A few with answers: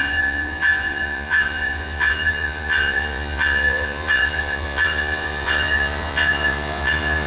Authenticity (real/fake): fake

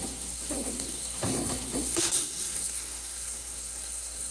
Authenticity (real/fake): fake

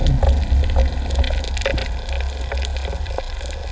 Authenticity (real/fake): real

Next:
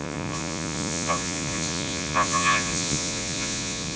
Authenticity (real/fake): fake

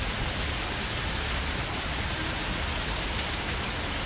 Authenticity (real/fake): real